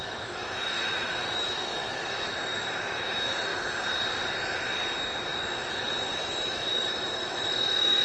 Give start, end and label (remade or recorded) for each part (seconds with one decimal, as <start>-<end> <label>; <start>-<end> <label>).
0.0-3.5 remade; 3.5-5.7 recorded; 5.7-8.0 remade